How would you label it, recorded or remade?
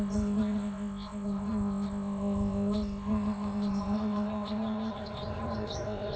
remade